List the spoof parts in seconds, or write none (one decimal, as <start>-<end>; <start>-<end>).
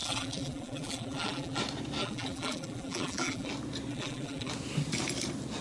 0.0-1.6; 2.0-3.5; 3.9-4.5